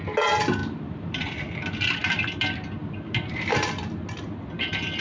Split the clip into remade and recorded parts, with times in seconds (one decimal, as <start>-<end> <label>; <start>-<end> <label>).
0.0-0.6 recorded; 0.6-1.4 remade; 1.4-2.0 recorded; 2.0-3.7 remade; 3.7-5.0 recorded